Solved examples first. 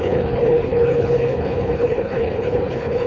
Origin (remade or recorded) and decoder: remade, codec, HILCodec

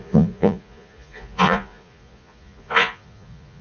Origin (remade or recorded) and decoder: remade, vocoder, Vocos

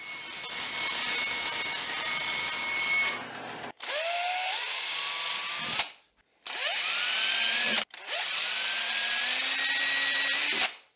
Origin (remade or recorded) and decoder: recorded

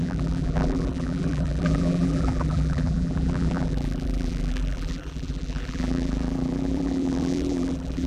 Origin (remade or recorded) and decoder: remade, vocoder, BigVGAN v2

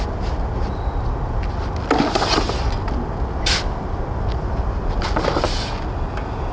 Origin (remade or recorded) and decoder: recorded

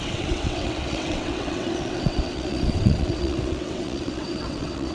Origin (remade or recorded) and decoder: remade, vocoder, WaveNeXt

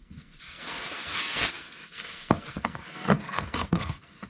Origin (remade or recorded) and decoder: remade, codec, SNAC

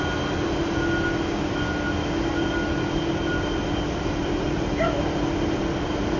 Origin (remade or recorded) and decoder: recorded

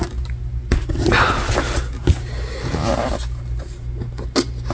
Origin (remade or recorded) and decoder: recorded